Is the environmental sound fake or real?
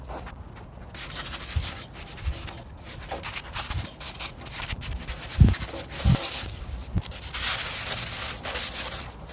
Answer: real